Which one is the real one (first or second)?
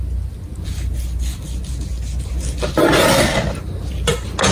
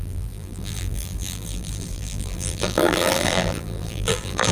first